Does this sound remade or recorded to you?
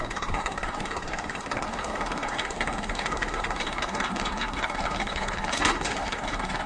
remade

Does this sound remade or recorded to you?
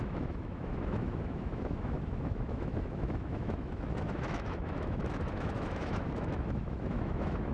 remade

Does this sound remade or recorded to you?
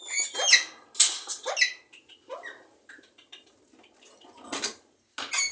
recorded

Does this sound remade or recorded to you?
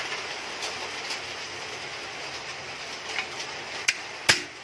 remade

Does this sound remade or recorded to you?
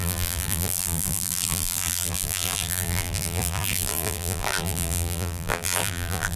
remade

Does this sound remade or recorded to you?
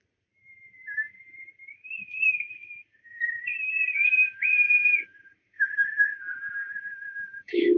remade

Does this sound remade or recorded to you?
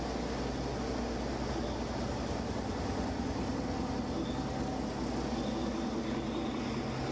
recorded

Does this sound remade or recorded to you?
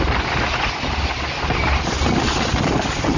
recorded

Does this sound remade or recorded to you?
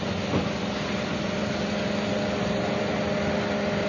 recorded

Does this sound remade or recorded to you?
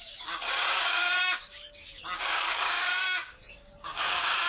remade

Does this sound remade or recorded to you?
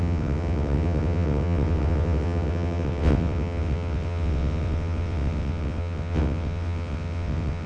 remade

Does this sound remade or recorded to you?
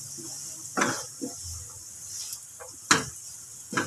recorded